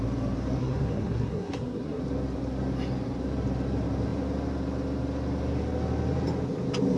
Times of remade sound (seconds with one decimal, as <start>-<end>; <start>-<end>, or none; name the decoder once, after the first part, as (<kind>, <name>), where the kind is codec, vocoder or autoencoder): 0.6-2.0 (codec, SNAC)